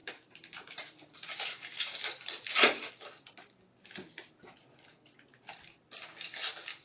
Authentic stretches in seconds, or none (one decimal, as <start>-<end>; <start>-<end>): 2.9-6.8